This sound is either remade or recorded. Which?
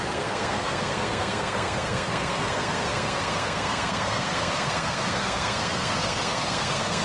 remade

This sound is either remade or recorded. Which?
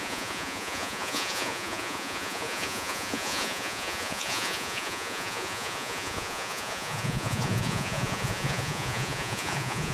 remade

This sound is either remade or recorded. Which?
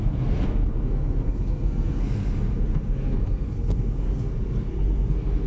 remade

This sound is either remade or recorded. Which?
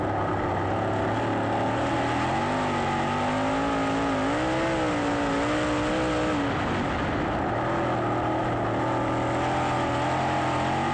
recorded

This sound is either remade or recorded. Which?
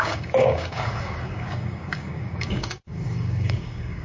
remade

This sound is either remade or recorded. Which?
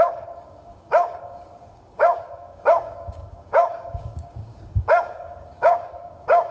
remade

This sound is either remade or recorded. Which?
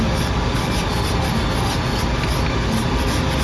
recorded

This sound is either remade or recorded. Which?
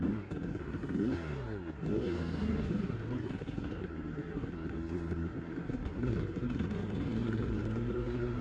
remade